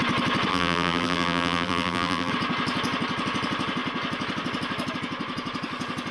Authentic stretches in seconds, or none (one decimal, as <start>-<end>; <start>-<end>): 0.0-0.5; 2.3-6.1